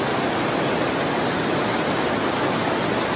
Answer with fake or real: real